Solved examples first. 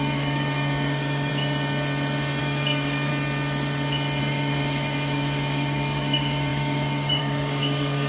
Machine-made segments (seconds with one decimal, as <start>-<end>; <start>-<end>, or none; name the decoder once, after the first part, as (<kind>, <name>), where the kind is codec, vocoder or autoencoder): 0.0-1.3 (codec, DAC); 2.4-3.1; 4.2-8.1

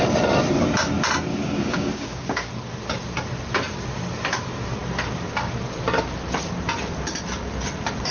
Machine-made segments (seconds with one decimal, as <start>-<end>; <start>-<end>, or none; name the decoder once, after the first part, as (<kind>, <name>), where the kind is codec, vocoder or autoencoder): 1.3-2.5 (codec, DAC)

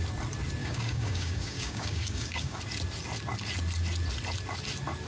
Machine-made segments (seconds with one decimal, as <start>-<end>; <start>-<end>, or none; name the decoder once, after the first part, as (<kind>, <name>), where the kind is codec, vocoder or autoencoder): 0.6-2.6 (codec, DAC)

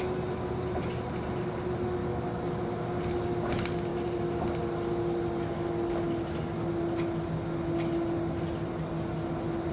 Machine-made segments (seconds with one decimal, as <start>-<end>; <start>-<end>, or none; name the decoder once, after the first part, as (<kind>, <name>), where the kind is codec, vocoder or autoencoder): 2.0-2.6 (codec, DAC)

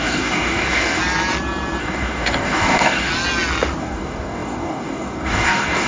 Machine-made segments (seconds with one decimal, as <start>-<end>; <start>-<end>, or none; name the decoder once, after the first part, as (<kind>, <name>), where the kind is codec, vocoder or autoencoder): 0.0-1.0 (codec, DAC); 1.8-3.1; 3.8-5.9

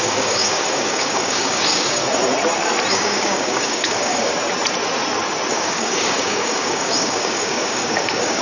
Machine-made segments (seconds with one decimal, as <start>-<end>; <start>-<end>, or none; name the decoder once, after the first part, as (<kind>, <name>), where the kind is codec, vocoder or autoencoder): 0.0-2.0 (codec, DAC); 2.9-4.3; 5.5-8.4